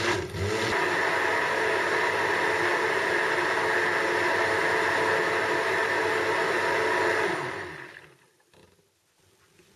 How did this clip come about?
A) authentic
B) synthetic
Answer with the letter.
A